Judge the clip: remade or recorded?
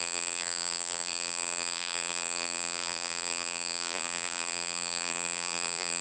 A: remade